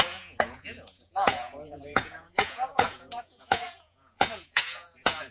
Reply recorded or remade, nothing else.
remade